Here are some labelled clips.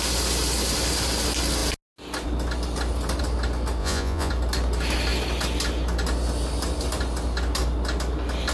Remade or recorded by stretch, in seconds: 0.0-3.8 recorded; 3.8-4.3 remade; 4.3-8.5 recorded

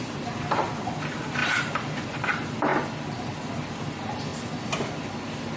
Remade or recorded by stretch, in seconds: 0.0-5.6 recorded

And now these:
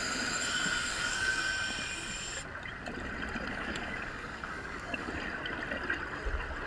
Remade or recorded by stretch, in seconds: 0.0-0.9 recorded; 0.9-1.4 remade; 1.4-3.5 recorded; 3.5-5.1 remade; 5.1-6.7 recorded

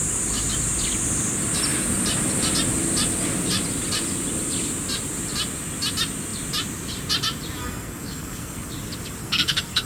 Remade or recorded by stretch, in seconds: 0.0-7.6 recorded; 7.6-8.7 remade; 8.7-9.2 recorded; 9.2-9.9 remade

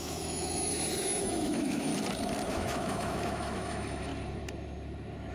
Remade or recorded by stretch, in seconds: 0.0-0.7 remade; 0.7-1.2 recorded; 1.2-1.9 remade; 1.9-2.5 recorded; 2.5-4.1 remade; 4.1-5.3 recorded

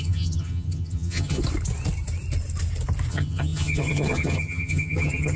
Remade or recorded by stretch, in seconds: 0.0-1.4 remade; 1.4-3.1 recorded; 3.1-5.4 remade